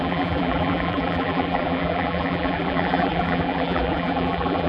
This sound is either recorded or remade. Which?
remade